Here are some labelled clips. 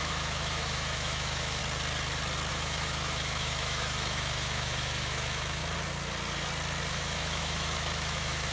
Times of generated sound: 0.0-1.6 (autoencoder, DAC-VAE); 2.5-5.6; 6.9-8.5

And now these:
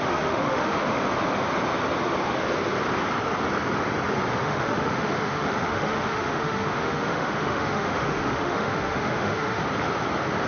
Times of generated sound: 0.0-1.0 (autoencoder, DAC-VAE); 4.3-9.6

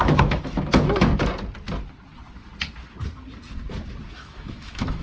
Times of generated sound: 0.0-1.1 (autoencoder, DAC-VAE); 4.1-5.0

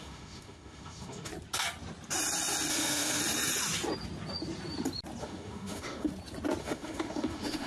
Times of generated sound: 0.0-1.3 (autoencoder, DAC-VAE); 2.7-3.2; 5.2-6.1; 6.6-7.7

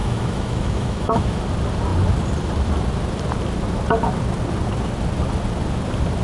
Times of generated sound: 0.0-1.4 (autoencoder, DAC-VAE)

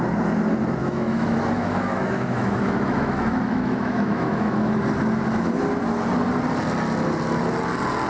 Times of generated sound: 0.8-4.8 (autoencoder, DAC-VAE)

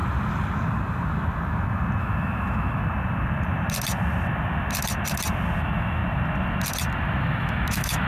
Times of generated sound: 2.0-2.8 (autoencoder, DAC-VAE); 5.6-6.0; 7.2-8.1